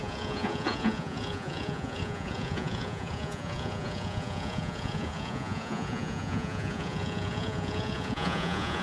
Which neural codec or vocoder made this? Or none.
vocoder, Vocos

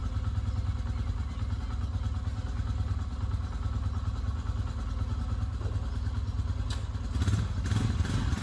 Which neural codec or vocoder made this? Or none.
none